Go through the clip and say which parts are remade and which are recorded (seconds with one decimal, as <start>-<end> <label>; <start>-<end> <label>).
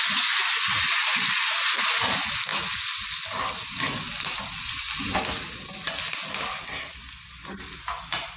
0.0-8.4 recorded